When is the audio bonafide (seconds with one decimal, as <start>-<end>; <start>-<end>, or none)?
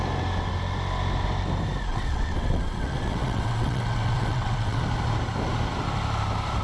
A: 0.0-1.9; 4.8-6.6